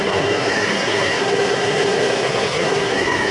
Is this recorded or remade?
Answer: remade